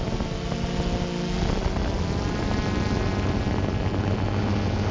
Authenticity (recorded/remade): recorded